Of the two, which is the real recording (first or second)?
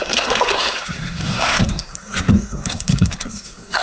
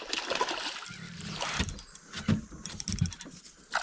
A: second